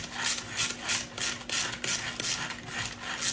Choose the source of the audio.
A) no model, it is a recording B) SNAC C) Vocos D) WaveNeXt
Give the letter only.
A